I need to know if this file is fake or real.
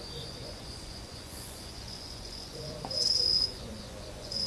fake